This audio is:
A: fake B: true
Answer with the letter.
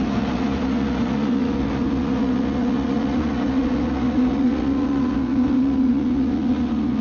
A